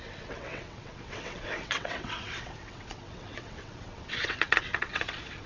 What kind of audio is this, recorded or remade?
remade